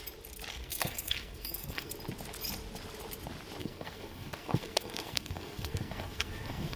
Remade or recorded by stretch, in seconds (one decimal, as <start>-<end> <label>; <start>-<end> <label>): 0.0-0.5 recorded; 0.5-1.9 remade; 1.9-3.6 recorded; 3.6-6.8 remade

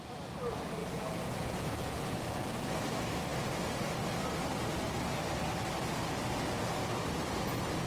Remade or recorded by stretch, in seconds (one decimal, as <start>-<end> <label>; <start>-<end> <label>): 0.0-0.8 recorded; 0.8-2.5 remade; 2.5-7.9 recorded